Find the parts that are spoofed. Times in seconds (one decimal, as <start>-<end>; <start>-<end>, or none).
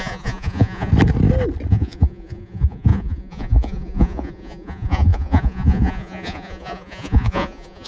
0.0-0.9; 1.7-7.9